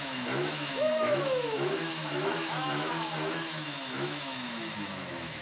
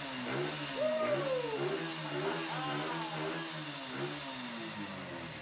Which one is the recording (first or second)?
second